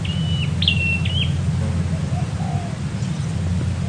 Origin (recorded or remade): recorded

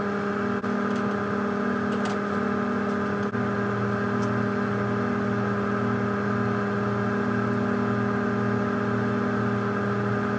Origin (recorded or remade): recorded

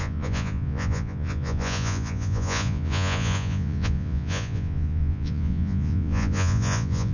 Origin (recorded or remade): remade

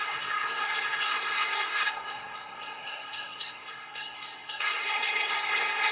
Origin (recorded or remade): remade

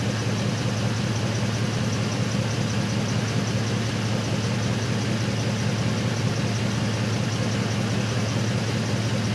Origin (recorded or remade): recorded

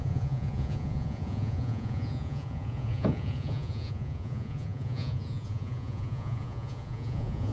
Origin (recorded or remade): remade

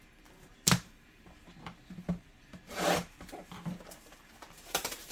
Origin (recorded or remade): remade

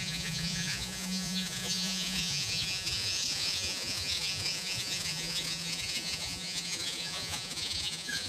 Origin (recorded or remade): remade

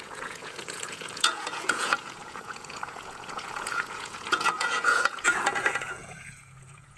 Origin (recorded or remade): remade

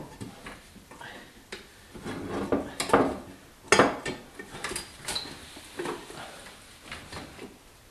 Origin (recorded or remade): recorded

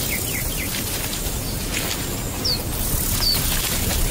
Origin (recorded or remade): recorded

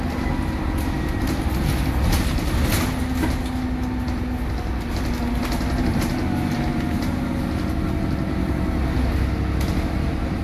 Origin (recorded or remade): recorded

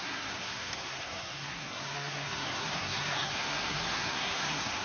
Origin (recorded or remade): remade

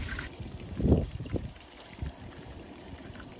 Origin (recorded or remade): remade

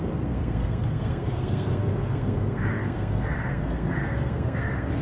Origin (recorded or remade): remade